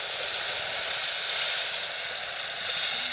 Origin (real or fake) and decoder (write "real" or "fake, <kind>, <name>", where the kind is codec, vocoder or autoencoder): real